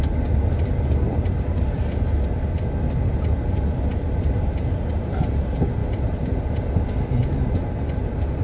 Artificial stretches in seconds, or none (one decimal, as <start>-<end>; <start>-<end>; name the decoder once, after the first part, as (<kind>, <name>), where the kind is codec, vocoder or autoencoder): 5.8-6.4 (vocoder, BigVGAN v2)